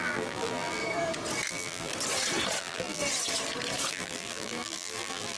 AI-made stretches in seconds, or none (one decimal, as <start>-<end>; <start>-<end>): 0.0-0.8; 1.5-1.9; 2.6-3.0; 3.9-5.4